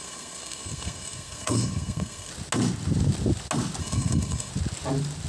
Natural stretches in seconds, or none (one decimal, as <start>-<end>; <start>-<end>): 2.3-3.8; 4.5-5.3